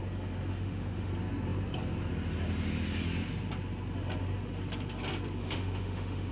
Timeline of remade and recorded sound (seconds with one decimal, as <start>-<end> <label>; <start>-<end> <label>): 0.0-0.5 recorded; 0.5-1.1 remade; 1.1-5.4 recorded; 5.4-6.3 remade